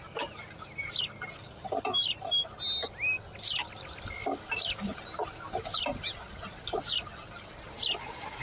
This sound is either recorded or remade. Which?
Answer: recorded